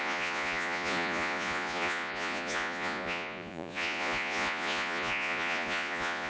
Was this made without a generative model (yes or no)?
no